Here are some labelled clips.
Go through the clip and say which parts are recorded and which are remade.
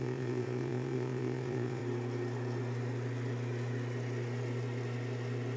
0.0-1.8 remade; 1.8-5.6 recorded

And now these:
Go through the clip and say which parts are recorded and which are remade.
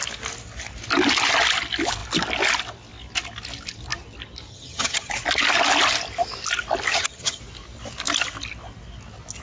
0.0-4.5 recorded; 4.5-5.1 remade; 5.1-6.9 recorded; 6.9-7.4 remade; 7.4-9.4 recorded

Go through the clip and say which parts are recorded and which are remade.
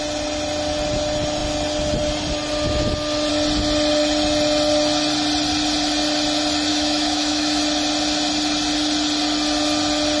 0.0-6.7 recorded; 6.7-7.6 remade; 7.6-10.2 recorded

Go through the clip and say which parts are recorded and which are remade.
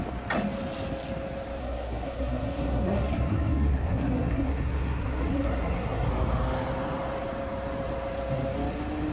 0.0-1.6 recorded; 1.6-6.1 remade; 6.1-9.1 recorded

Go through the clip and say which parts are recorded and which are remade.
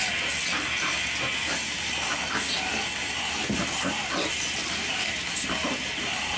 0.0-4.6 recorded; 4.6-5.1 remade; 5.1-6.4 recorded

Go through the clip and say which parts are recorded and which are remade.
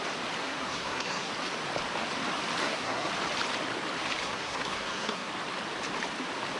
0.0-0.4 recorded; 0.4-1.3 remade; 1.3-2.6 recorded; 2.6-3.1 remade; 3.1-4.2 recorded; 4.2-5.3 remade; 5.3-6.6 recorded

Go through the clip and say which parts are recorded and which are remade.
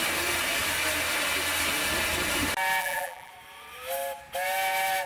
0.0-2.8 recorded; 2.8-3.3 remade; 3.3-5.1 recorded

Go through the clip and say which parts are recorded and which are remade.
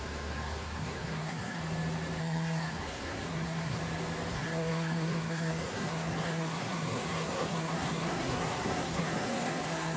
0.0-1.6 remade; 1.6-2.2 recorded; 2.2-3.8 remade; 3.8-4.3 recorded; 4.3-10.0 remade